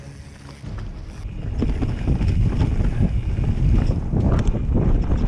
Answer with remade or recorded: recorded